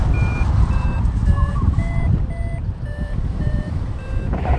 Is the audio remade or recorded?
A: remade